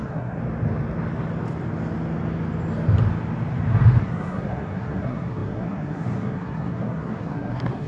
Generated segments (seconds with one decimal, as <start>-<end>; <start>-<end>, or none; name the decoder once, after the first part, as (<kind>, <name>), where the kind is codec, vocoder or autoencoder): 0.0-0.4 (codec, SNAC); 4.0-7.9